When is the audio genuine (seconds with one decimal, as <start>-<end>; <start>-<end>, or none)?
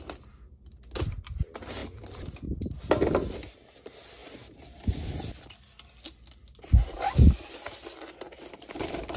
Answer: 0.0-9.2